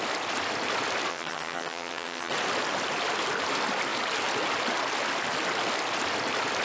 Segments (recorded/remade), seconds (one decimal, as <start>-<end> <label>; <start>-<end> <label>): 0.0-1.1 recorded; 1.1-2.3 remade; 2.3-6.6 recorded